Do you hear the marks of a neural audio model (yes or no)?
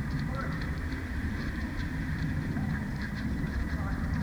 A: yes